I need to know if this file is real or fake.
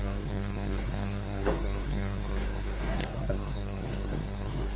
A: fake